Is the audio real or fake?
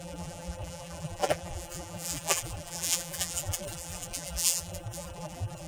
fake